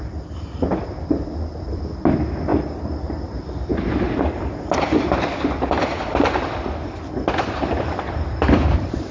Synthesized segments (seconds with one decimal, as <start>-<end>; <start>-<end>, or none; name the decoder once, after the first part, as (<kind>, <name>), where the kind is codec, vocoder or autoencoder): 0.0-3.7 (vocoder, BigVGAN v2); 4.4-9.1